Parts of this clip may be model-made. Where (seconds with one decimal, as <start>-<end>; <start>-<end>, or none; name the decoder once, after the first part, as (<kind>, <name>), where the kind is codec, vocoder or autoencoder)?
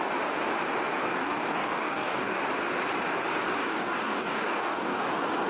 1.1-2.4 (codec, DAC); 3.6-5.1